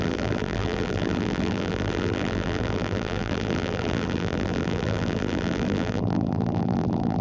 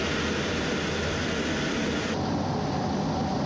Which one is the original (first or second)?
second